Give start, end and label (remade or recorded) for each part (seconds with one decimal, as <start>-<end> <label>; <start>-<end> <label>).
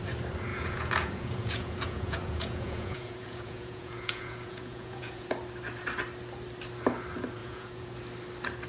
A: 0.0-0.5 recorded; 0.5-5.3 remade; 5.3-7.4 recorded; 7.4-8.0 remade; 8.0-8.7 recorded